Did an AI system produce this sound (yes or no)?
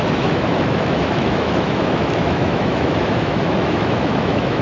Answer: yes